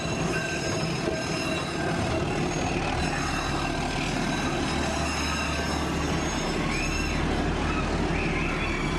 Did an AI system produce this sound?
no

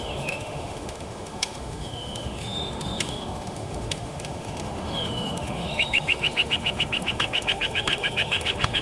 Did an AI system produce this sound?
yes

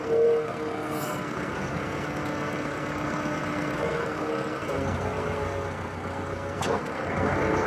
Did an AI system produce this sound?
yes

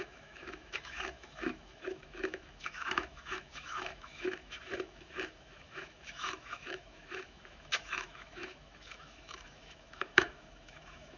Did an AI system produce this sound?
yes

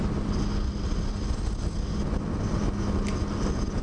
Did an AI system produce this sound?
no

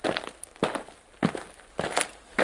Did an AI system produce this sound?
no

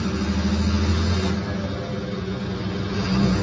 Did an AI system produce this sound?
no